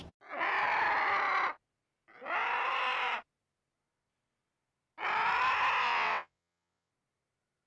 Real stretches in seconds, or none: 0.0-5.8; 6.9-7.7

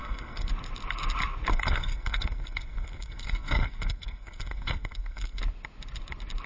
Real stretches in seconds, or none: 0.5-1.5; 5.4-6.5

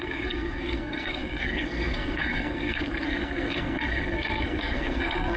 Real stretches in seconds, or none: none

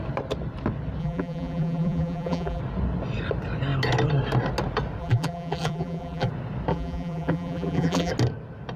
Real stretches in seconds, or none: 0.0-1.0; 2.6-5.0; 6.3-6.7; 8.1-8.8

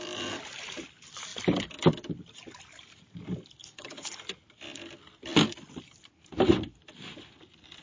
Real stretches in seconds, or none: 0.0-3.6; 4.1-7.8